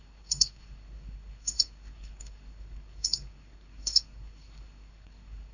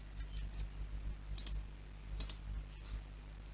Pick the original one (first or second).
second